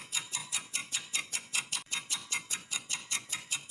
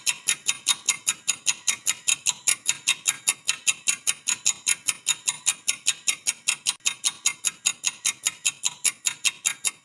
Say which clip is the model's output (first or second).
first